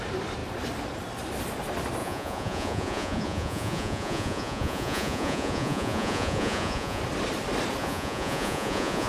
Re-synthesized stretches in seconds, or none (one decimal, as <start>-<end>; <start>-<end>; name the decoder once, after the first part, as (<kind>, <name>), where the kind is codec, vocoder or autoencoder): 2.0-7.0 (vocoder, Vocos); 7.8-9.1